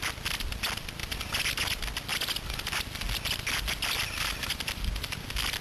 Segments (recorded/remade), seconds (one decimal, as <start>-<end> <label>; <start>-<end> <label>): 0.0-5.6 recorded